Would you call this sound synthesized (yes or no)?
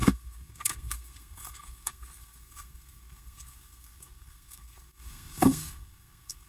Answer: yes